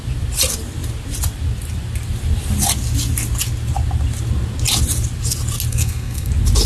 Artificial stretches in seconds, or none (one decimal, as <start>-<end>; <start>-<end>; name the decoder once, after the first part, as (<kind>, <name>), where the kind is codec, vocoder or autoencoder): 5.7-6.3 (codec, SNAC)